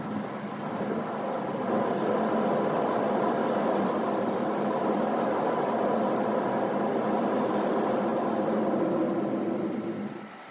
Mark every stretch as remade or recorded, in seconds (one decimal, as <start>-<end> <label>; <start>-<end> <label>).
0.0-10.5 recorded